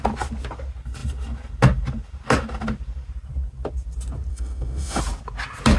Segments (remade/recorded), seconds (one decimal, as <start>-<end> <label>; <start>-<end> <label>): 0.0-4.3 recorded; 4.3-5.0 remade; 5.0-5.8 recorded